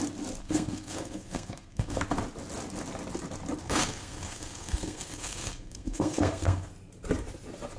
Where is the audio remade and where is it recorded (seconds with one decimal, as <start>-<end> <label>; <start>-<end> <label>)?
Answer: 0.0-0.4 recorded; 0.4-2.0 remade; 2.0-3.6 recorded; 3.6-6.7 remade; 6.7-7.8 recorded